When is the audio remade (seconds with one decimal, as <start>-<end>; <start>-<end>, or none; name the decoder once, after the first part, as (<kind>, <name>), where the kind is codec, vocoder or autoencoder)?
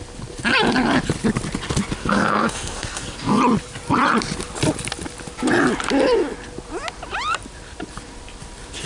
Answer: 2.0-3.4 (codec, SNAC)